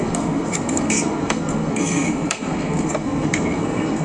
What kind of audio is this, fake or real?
fake